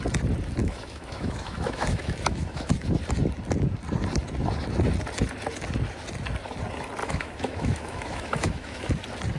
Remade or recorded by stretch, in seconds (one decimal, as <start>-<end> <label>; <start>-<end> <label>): 0.0-0.6 recorded; 0.6-2.7 remade; 2.7-7.0 recorded; 7.0-8.9 remade; 8.9-9.4 recorded